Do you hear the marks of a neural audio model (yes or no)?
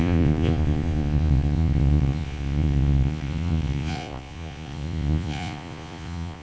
yes